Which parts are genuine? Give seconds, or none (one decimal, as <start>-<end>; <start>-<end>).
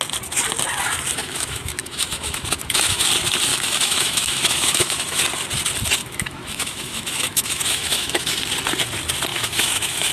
0.0-1.2; 3.1-3.5; 5.2-6.0; 8.4-9.3